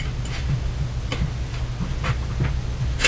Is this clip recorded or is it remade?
recorded